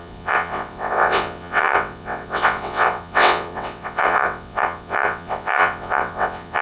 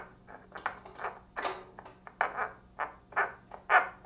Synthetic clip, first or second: first